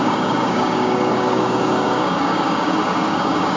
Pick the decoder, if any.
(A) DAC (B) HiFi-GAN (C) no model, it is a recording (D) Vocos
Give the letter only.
A